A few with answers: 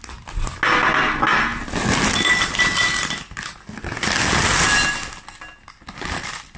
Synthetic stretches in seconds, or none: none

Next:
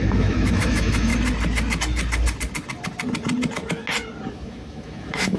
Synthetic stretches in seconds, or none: 0.0-1.1 (autoencoder, DAC-VAE); 4.3-5.4

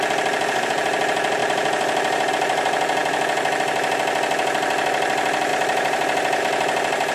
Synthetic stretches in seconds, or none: 1.4-2.3 (vocoder, BigVGAN v2); 5.5-6.4

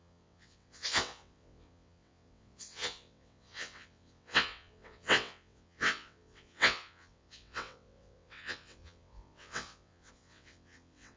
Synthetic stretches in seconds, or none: 0.0-11.2 (vocoder, WaveNeXt)

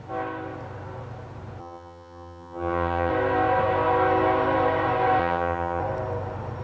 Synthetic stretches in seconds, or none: 1.6-3.1 (vocoder, HiFi-GAN); 5.2-5.8

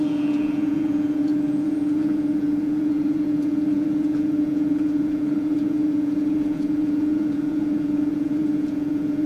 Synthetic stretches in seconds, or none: 0.0-9.3 (vocoder, Vocos)

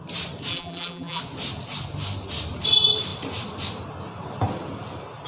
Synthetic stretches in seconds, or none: 0.5-1.2 (vocoder, BigVGAN v2)